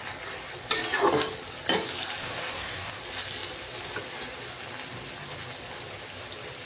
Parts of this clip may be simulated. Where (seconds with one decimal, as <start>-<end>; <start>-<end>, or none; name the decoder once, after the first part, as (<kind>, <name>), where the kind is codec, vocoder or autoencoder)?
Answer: 2.2-3.0 (codec, DAC)